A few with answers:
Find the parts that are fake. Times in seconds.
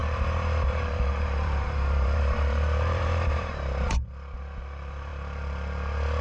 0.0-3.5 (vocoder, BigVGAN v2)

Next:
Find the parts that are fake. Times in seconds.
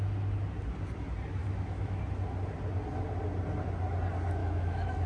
1.4-2.0 (autoencoder, DAC-VAE); 4.4-5.1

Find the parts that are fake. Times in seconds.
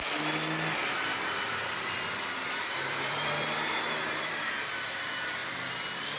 0.8-4.5 (vocoder, BigVGAN v2)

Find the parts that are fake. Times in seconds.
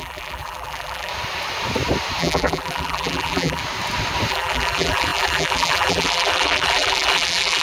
0.0-1.1 (vocoder, BigVGAN v2); 2.2-3.6; 4.3-7.6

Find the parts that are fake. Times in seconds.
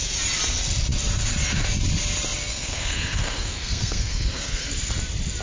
2.5-4.7 (codec, SNAC)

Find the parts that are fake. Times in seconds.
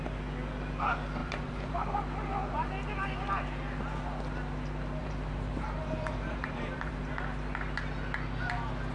1.2-1.9 (vocoder, BigVGAN v2); 5.0-7.1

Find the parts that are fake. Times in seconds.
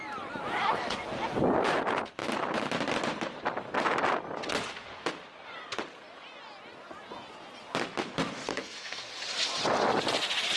8.5-9.1 (codec, SNAC)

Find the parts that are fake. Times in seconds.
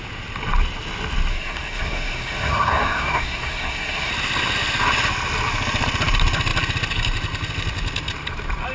1.3-4.1 (codec, SNAC)